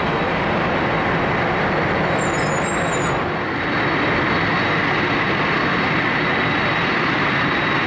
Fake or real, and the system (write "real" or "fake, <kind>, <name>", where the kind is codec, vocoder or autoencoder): real